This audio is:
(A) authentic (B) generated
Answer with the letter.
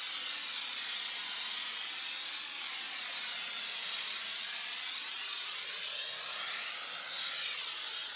A